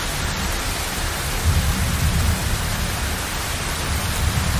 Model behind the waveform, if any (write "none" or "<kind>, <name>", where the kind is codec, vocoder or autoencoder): none